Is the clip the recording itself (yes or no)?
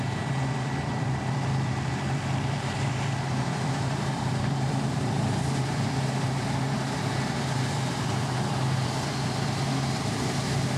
no